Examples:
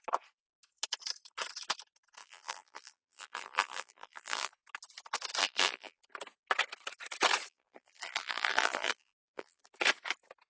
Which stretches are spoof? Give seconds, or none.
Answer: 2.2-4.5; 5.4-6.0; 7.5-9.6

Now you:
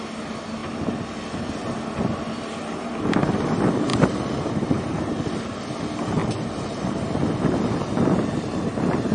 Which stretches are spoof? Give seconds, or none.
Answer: 3.9-5.6; 6.2-6.8

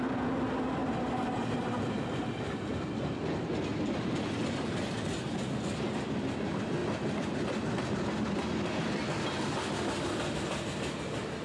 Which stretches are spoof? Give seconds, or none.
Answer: none

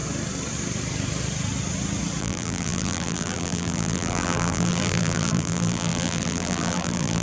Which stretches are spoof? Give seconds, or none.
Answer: 2.2-7.2